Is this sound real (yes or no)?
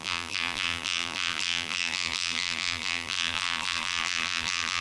no